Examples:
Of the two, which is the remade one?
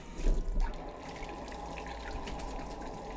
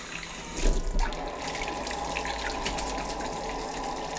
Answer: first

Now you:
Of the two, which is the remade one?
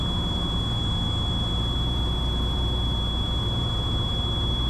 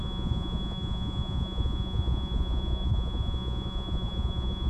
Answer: second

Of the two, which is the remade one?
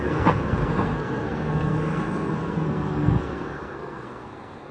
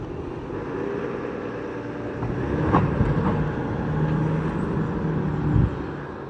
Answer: first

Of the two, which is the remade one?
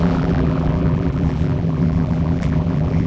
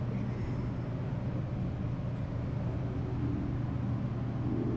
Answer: first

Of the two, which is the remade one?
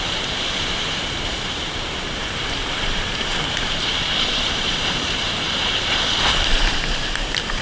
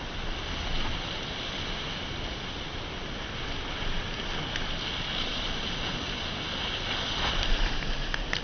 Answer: first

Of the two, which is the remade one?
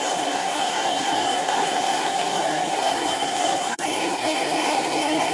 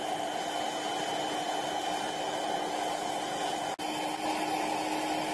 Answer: first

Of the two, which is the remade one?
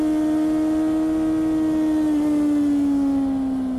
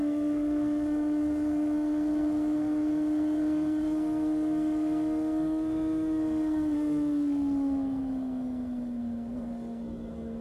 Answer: second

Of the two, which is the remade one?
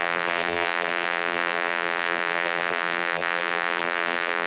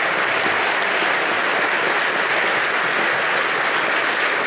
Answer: first